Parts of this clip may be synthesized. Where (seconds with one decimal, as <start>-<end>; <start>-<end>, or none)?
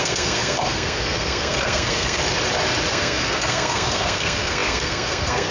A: 0.0-2.2; 2.9-5.5